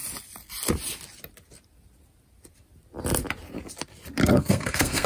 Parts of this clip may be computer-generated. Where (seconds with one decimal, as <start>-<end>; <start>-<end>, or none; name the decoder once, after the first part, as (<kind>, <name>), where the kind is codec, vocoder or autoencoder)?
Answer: 4.2-5.1 (codec, SNAC)